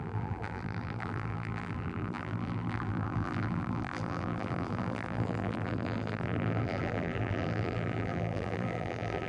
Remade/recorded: remade